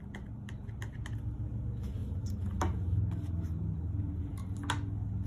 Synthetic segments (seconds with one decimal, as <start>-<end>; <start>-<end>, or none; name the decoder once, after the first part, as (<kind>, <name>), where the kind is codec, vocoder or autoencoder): none

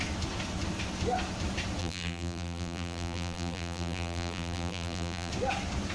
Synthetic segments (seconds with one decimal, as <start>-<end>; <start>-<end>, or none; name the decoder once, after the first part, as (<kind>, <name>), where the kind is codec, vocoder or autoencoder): 1.8-5.3 (vocoder, BigVGAN v2)

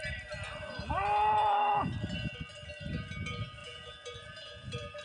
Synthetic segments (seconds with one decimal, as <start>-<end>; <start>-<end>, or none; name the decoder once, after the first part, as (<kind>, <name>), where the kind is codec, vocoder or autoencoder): 3.6-5.0 (vocoder, Vocos)

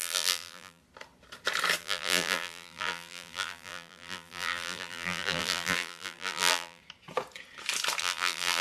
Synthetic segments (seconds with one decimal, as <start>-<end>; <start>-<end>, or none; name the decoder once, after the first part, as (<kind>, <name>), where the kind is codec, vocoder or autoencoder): 0.0-0.8 (vocoder, BigVGAN v2); 1.8-6.8; 8.0-8.6

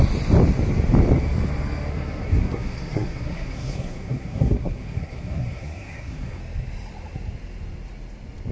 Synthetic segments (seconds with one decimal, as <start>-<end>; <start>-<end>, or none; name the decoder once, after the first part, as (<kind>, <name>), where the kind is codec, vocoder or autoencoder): 1.9-6.4 (codec, SNAC)

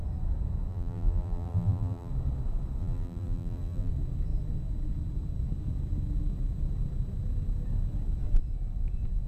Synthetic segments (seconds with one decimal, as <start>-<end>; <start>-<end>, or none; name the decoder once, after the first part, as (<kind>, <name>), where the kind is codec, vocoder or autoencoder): 0.7-2.1 (vocoder, BigVGAN v2); 2.8-3.9

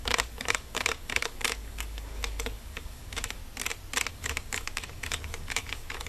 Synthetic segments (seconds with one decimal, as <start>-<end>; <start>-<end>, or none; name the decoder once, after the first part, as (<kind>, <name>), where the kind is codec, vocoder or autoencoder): 0.0-3.4 (codec, DAC); 4.1-6.1